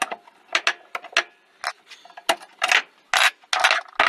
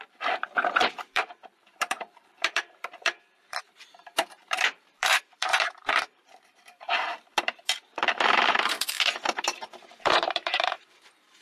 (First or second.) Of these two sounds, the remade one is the second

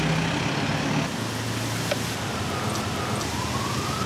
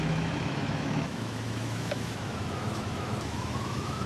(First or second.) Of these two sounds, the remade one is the second